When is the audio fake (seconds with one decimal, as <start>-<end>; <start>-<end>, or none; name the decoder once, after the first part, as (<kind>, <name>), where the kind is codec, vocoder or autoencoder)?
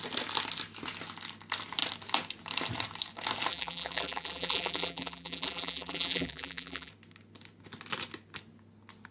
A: 3.5-6.9 (vocoder, BigVGAN v2)